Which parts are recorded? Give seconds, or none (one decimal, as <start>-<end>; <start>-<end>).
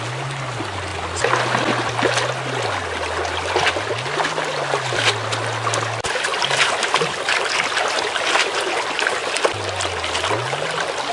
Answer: 0.0-11.1